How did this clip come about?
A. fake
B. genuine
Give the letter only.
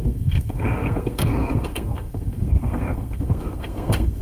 A